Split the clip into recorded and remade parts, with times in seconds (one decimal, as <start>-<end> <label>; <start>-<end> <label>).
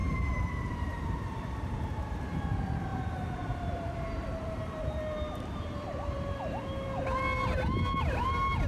0.0-2.2 remade; 2.2-2.9 recorded; 2.9-7.0 remade; 7.0-8.7 recorded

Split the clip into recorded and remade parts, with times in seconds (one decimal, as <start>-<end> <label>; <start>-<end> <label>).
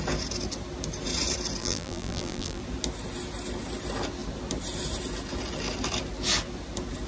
0.0-1.6 recorded; 1.6-2.6 remade; 2.6-7.1 recorded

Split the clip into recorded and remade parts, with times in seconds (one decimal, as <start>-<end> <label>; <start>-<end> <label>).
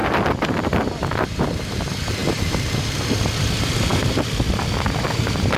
0.0-5.6 recorded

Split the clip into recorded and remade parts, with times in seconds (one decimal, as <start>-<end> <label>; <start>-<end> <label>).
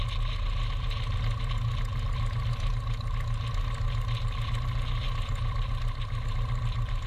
0.0-7.1 recorded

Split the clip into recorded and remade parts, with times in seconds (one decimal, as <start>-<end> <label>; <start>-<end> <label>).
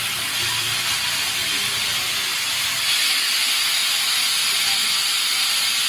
0.0-4.4 remade; 4.4-5.1 recorded; 5.1-5.9 remade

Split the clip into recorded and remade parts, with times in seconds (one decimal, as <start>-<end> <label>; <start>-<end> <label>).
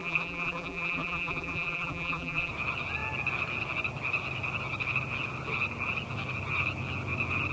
0.0-2.5 remade; 2.5-7.5 recorded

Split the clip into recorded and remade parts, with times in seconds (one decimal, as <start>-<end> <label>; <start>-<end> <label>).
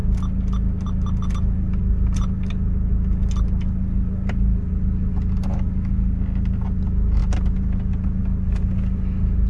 0.0-9.5 recorded